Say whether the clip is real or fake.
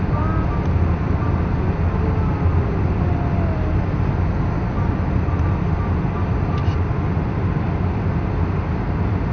real